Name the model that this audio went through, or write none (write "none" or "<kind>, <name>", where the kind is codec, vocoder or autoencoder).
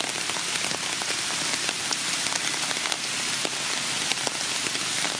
none